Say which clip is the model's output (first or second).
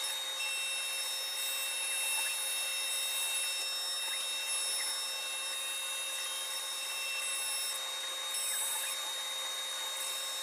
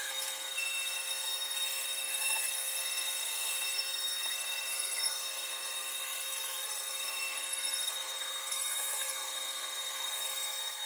second